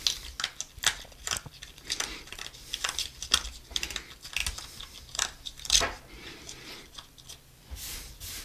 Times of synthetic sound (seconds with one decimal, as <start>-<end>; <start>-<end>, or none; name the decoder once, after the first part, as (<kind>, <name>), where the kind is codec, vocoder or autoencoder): 1.7-2.9 (vocoder, BigVGAN v2); 4.4-5.8